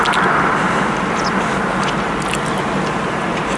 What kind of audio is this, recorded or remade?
recorded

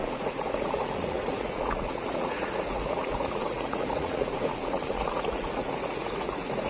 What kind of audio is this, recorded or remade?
remade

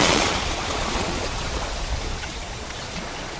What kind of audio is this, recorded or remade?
remade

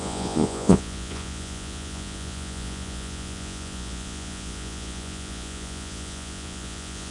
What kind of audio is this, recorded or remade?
remade